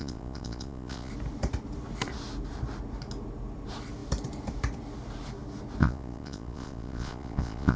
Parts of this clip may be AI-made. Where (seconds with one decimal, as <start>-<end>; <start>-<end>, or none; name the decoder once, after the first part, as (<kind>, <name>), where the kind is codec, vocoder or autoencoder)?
0.0-1.1 (vocoder, Vocos); 5.8-7.8